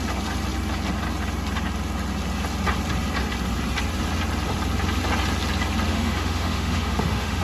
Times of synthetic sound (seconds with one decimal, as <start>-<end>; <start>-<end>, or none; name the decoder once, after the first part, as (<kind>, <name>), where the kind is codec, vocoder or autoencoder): 5.9-7.4 (autoencoder, DAC-VAE)